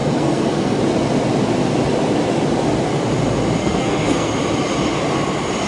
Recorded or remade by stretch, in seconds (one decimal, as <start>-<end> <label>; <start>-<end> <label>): 0.0-0.8 remade; 0.8-3.6 recorded; 3.6-4.3 remade; 4.3-5.7 recorded